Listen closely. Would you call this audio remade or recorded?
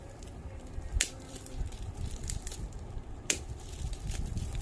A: remade